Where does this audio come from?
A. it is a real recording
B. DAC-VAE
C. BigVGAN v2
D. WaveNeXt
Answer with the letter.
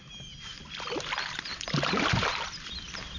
A